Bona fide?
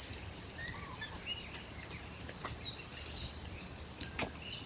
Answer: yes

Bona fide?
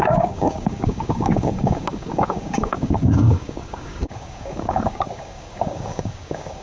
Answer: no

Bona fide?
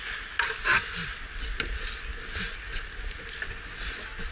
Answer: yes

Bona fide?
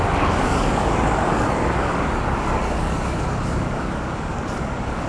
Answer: no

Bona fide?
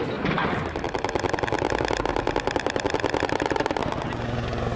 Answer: yes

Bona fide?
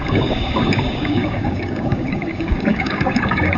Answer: no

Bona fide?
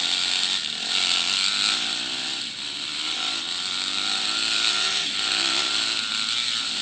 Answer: yes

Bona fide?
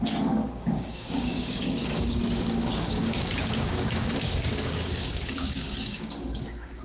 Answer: no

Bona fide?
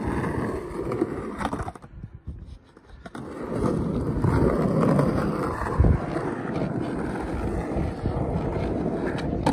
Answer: yes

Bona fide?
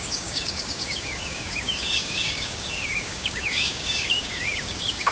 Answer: no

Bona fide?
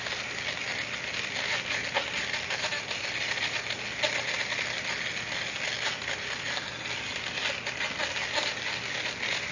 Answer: yes